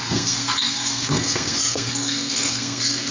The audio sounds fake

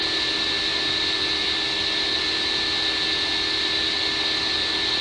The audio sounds real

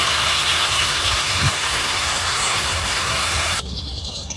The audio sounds fake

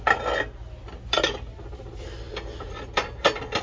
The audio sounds real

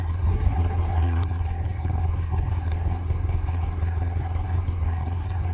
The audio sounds fake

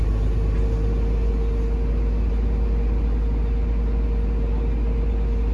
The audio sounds real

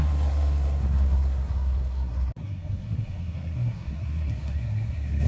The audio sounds fake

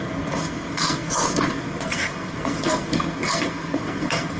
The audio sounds fake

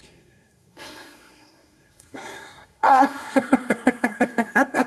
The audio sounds fake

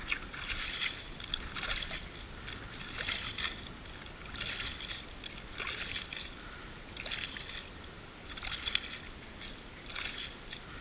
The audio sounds real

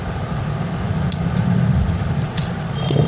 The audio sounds real